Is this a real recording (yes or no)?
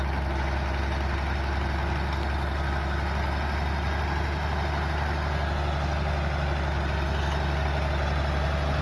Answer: yes